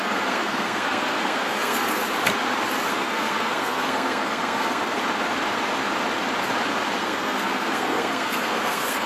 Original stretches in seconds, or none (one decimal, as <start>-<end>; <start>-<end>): 2.0-2.9; 5.0-7.0